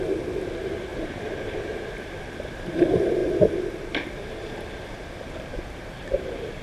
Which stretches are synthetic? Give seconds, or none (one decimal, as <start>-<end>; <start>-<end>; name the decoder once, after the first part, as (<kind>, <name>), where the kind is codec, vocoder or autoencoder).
0.9-1.8 (vocoder, BigVGAN v2)